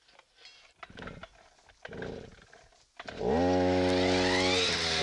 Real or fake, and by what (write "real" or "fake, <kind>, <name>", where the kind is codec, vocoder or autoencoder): real